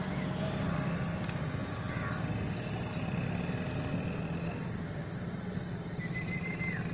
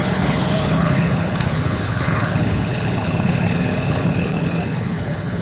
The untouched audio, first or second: first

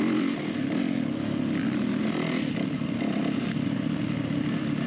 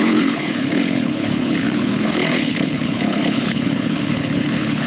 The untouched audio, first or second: first